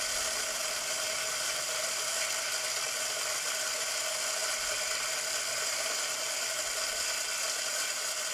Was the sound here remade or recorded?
recorded